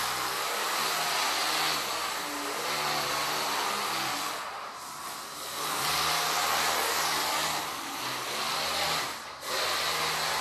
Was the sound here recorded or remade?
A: recorded